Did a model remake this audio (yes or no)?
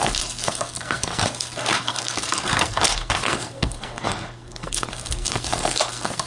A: yes